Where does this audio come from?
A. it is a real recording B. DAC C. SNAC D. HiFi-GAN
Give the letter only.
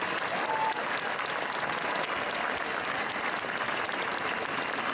A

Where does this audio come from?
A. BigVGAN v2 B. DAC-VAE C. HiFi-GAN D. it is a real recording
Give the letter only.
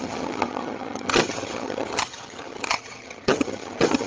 C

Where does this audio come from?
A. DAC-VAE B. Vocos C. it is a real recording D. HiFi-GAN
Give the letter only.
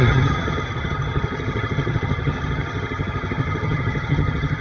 D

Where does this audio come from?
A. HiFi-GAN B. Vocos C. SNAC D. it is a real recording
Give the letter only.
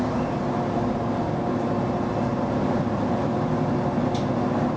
D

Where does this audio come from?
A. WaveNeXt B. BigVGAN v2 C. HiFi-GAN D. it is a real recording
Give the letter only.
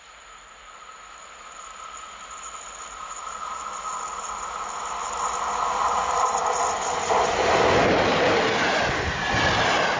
D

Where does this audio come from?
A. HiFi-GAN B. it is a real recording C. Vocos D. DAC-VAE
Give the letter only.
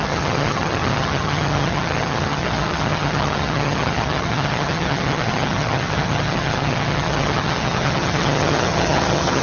A